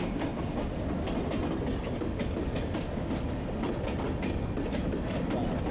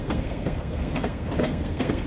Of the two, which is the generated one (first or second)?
second